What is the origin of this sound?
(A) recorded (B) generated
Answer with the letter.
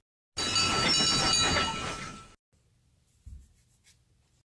A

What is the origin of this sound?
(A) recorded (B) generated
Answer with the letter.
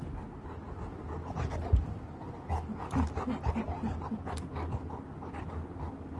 A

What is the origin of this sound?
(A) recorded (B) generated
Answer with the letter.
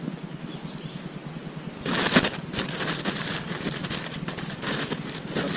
A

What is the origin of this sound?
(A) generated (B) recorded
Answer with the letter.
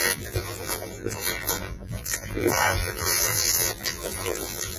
A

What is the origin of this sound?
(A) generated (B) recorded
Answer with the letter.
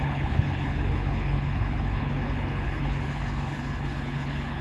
A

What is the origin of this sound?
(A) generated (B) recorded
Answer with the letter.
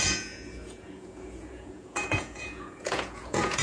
A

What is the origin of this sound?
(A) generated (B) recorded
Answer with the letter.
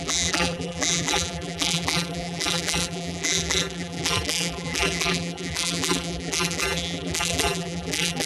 A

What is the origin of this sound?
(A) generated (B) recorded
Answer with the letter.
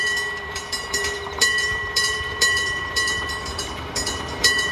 A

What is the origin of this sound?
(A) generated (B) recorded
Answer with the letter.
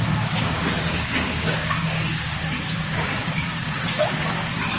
A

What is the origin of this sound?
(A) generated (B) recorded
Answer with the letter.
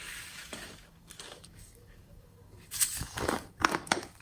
A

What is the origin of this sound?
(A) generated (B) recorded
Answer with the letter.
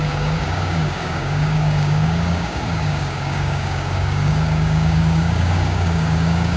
A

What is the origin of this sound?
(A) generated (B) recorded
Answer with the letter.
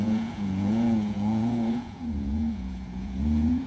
A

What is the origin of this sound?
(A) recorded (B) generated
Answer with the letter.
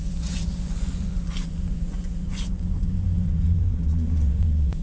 B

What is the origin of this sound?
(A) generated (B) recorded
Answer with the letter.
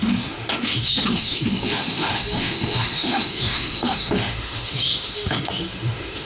A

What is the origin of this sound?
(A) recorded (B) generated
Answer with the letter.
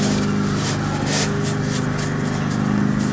A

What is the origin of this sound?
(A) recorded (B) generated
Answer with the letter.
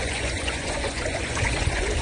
B